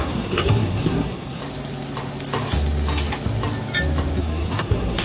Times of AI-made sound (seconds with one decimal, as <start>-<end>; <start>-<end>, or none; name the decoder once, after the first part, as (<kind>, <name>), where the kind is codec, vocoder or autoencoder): 0.0-1.4 (codec, SNAC); 4.2-5.0